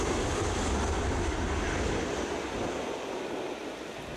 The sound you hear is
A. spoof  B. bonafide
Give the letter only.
B